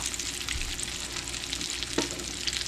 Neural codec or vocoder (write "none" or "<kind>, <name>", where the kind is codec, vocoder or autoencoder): none